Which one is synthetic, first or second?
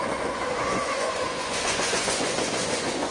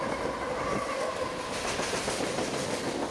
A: first